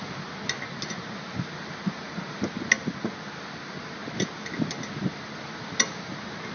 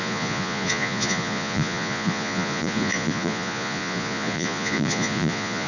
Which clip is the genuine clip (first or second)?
first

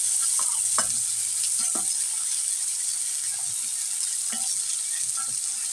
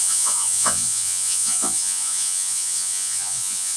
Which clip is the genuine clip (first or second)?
first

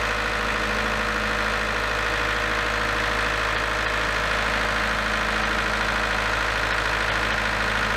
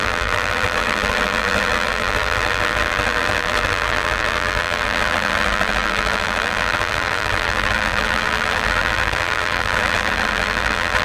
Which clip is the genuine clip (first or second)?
first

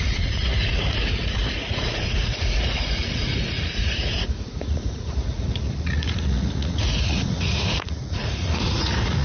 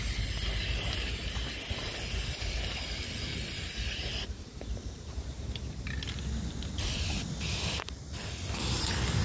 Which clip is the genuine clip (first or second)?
second